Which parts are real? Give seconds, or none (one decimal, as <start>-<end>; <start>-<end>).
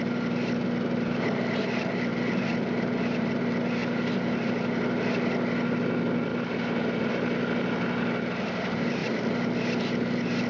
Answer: 0.0-10.5